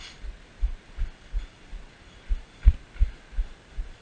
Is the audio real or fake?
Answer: real